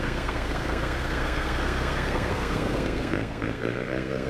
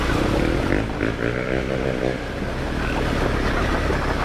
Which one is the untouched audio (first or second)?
second